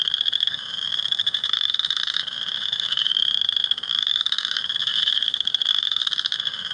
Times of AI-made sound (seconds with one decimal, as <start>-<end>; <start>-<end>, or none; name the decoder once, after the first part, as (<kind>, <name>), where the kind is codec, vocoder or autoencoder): 0.0-6.7 (autoencoder, DAC-VAE)